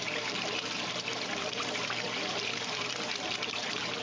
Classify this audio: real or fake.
fake